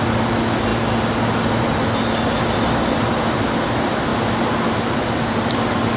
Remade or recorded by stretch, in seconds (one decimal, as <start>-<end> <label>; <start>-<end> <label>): 0.0-6.0 recorded